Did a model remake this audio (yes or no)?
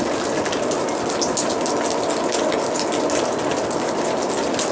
no